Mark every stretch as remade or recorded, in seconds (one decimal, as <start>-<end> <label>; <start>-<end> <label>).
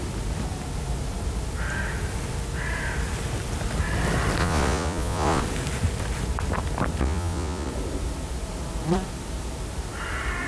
0.0-4.4 recorded; 4.4-5.4 remade; 5.4-7.0 recorded; 7.0-7.7 remade; 7.7-10.5 recorded